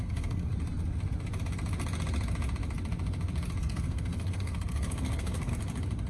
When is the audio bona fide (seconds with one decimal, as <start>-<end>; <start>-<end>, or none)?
0.5-3.6; 5.5-6.1